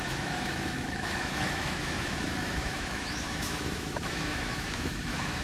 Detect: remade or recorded remade